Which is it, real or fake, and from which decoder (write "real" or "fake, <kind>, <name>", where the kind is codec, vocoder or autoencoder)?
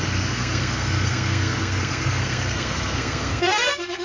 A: fake, codec, SNAC